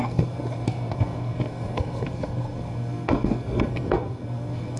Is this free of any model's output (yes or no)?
no